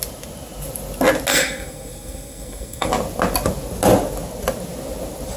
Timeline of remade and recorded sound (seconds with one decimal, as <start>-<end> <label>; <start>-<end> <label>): 0.0-1.3 recorded; 1.3-2.9 remade; 2.9-5.4 recorded